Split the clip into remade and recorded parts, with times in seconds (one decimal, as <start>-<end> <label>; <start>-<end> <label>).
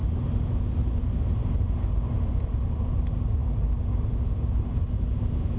0.0-5.6 recorded